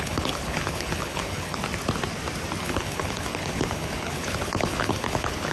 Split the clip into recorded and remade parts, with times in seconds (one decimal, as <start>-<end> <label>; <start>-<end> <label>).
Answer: 0.0-1.6 remade; 1.6-2.6 recorded; 2.6-5.5 remade